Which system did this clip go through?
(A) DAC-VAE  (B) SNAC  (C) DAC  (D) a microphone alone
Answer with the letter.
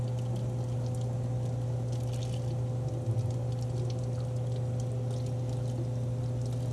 D